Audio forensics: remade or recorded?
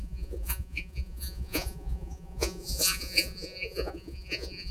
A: remade